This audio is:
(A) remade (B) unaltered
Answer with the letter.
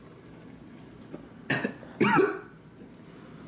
B